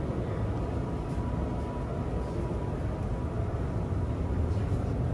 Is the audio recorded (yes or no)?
yes